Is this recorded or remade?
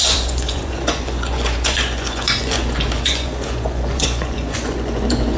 remade